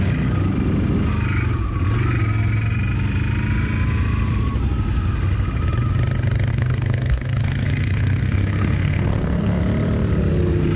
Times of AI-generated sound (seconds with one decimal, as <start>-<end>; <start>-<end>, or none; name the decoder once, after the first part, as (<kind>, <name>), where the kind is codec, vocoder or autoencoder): 6.5-9.6 (codec, SNAC)

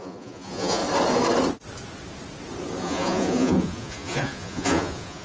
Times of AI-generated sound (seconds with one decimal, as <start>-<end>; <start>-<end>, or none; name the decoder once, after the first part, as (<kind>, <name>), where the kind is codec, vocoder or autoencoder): 0.0-0.8 (vocoder, Vocos); 2.8-5.2

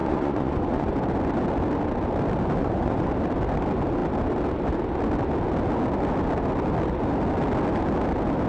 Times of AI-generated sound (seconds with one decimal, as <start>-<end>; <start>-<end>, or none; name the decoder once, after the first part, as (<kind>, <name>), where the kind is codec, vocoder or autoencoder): 0.0-0.9 (vocoder, Vocos); 2.6-3.1

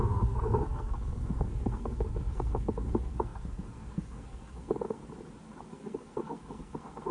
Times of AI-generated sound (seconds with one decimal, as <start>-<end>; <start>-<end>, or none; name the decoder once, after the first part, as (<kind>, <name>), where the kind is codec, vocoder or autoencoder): 0.0-5.0 (codec, SNAC); 5.7-7.1